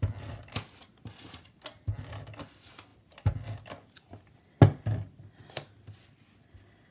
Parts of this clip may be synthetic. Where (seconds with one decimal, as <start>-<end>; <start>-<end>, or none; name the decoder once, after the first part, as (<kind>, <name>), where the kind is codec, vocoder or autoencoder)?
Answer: none